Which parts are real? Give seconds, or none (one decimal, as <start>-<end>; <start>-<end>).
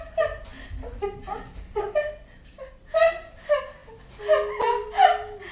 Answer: 0.0-5.5